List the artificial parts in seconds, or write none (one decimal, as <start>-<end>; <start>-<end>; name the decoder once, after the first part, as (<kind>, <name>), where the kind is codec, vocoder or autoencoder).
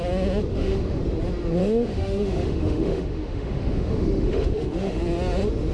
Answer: 0.5-1.0 (autoencoder, DAC-VAE); 1.6-5.0